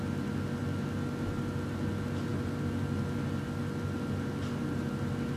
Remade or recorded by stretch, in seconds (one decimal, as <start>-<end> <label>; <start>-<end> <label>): 0.0-5.4 recorded